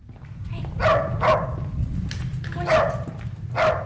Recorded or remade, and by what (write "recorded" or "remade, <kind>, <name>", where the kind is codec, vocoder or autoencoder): recorded